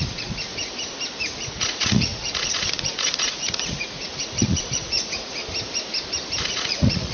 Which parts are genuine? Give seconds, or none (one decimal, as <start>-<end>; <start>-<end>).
0.5-1.2; 5.4-6.4